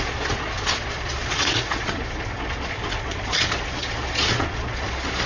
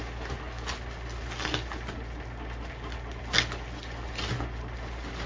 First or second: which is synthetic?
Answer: first